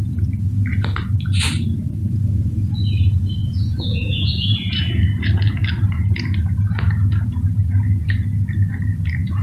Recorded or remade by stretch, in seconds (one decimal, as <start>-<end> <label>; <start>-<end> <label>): 0.0-3.4 recorded; 3.4-5.0 remade; 5.0-9.4 recorded